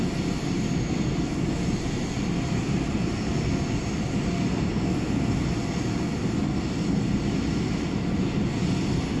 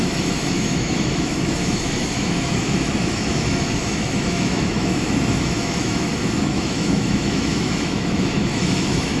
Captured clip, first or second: first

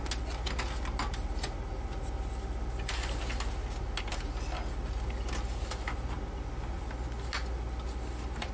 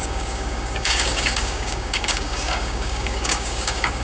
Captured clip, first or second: first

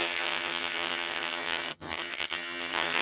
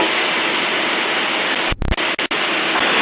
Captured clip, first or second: second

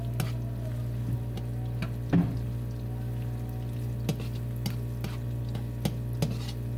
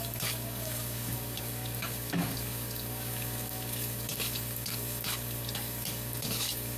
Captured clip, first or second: first